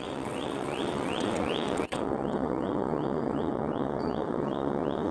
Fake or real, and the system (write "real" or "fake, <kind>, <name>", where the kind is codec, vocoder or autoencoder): fake, vocoder, WaveNeXt